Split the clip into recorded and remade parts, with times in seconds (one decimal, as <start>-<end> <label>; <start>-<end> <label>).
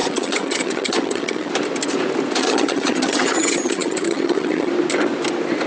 0.0-1.5 remade; 1.5-2.4 recorded; 2.4-4.7 remade; 4.7-5.7 recorded